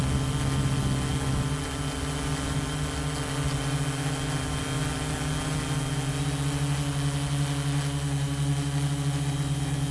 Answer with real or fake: real